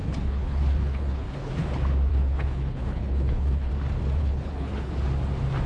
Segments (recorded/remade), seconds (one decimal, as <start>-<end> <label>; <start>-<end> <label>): 0.0-1.5 remade; 1.5-2.1 recorded; 2.1-3.7 remade; 3.7-4.2 recorded; 4.2-4.9 remade; 4.9-5.7 recorded